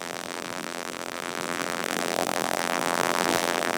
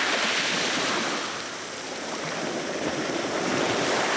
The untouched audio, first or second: second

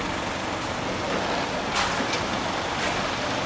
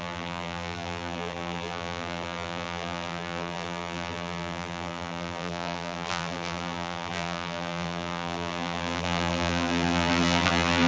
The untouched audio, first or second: first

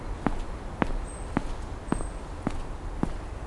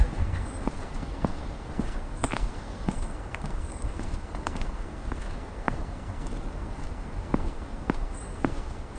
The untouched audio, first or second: first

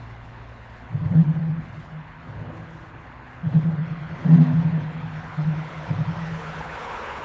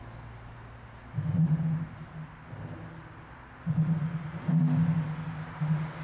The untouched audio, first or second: second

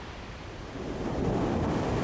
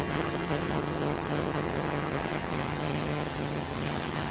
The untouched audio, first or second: first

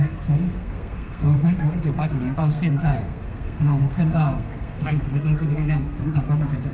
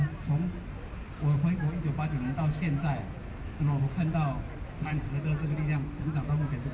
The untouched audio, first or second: second